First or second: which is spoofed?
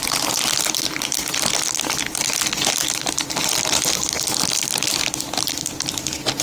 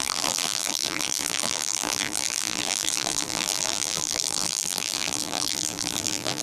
second